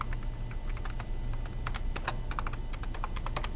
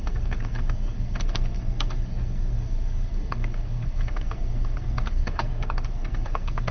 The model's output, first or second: second